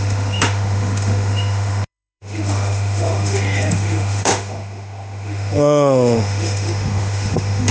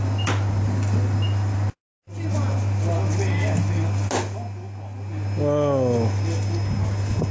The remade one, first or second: first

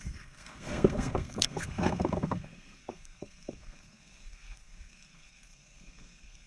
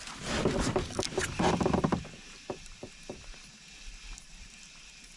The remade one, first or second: first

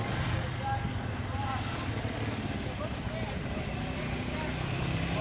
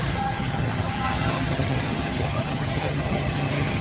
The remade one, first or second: second